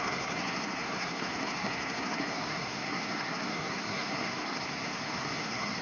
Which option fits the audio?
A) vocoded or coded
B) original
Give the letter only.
A